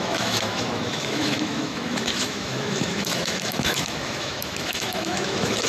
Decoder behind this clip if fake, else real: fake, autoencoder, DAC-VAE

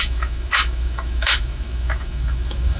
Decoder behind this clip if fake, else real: fake, autoencoder, DAC-VAE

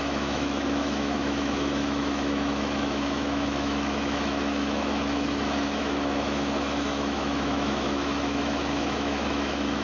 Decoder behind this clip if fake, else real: fake, autoencoder, DAC-VAE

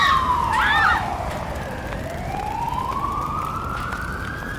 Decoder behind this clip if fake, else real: real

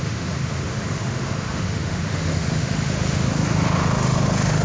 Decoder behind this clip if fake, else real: fake, autoencoder, DAC-VAE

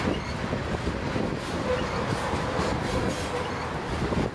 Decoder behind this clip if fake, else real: real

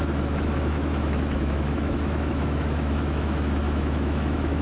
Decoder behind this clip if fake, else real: fake, autoencoder, DAC-VAE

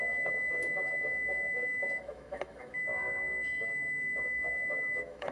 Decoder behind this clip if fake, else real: fake, autoencoder, DAC-VAE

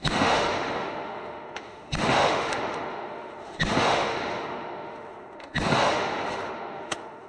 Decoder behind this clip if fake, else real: fake, autoencoder, DAC-VAE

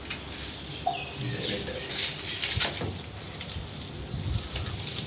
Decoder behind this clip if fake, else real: real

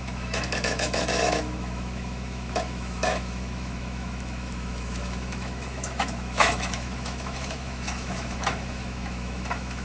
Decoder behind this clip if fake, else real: fake, autoencoder, DAC-VAE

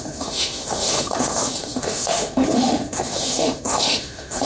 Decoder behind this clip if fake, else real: fake, autoencoder, DAC-VAE